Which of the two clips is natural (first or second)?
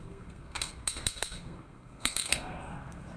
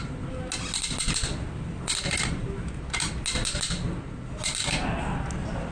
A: second